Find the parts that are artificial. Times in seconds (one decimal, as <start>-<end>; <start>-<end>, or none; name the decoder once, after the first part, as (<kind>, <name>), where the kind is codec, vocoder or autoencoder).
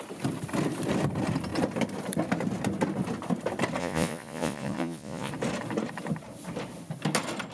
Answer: 3.8-5.3 (vocoder, Vocos)